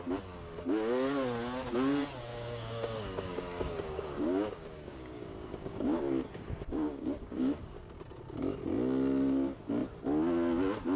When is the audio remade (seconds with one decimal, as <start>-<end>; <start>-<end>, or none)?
2.3-6.2; 6.7-7.8